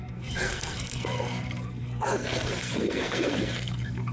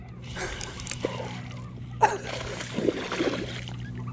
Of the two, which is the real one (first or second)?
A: second